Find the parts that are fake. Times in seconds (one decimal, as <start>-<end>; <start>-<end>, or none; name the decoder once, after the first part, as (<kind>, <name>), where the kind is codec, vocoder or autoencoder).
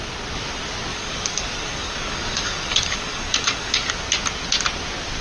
0.9-3.9 (codec, DAC)